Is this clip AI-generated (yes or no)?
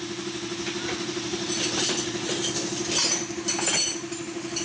no